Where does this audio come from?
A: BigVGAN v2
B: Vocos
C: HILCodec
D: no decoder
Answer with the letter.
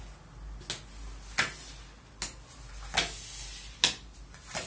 D